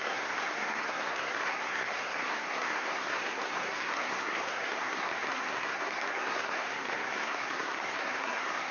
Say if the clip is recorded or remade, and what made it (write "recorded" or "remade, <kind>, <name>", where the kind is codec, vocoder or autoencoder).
remade, codec, SNAC